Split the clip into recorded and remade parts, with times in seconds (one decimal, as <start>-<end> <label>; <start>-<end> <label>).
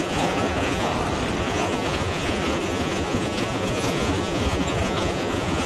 0.0-0.9 remade; 0.9-1.4 recorded; 1.4-5.7 remade